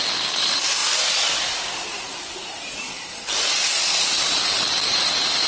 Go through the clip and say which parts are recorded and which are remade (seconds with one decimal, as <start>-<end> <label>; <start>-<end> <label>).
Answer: 0.0-2.1 recorded; 2.1-2.9 remade; 2.9-3.9 recorded; 3.9-5.1 remade; 5.1-5.5 recorded